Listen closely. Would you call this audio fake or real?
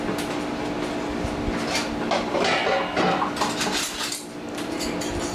real